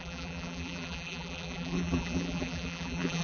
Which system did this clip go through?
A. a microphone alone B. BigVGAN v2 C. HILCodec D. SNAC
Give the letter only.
B